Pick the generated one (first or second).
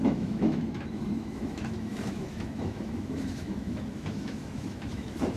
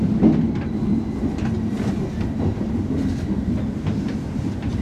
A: first